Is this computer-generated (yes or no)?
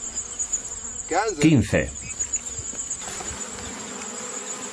no